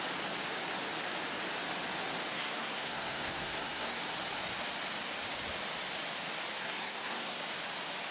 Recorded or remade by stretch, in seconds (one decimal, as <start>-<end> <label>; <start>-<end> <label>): 0.0-2.3 recorded; 2.3-4.0 remade; 4.0-6.6 recorded; 6.6-7.4 remade; 7.4-8.1 recorded